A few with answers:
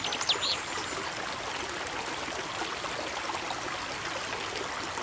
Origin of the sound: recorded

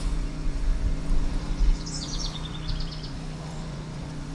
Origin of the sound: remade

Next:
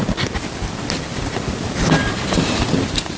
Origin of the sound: recorded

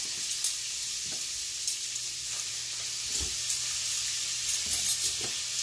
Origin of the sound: recorded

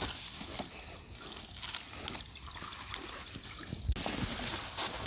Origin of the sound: recorded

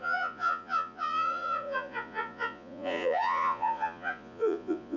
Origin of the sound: remade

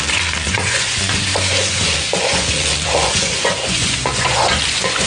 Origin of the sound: remade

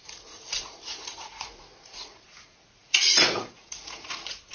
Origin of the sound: remade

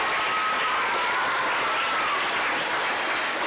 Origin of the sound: recorded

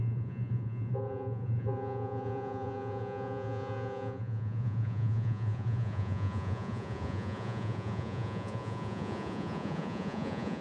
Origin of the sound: remade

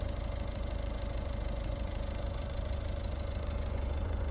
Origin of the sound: remade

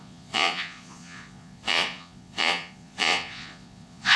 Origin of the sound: remade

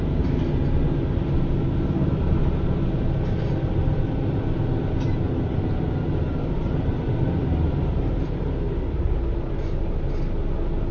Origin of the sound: recorded